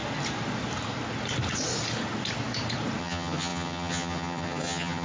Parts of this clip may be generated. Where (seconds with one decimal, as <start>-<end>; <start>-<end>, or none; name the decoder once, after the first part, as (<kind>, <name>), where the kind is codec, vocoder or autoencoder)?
3.0-5.0 (vocoder, HiFi-GAN)